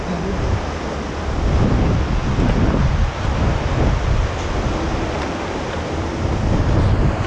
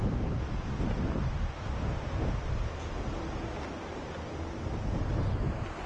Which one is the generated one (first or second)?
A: first